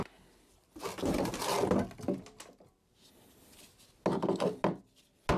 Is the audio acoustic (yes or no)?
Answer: yes